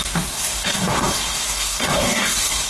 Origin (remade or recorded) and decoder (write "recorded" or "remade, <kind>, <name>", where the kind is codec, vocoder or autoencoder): remade, codec, SNAC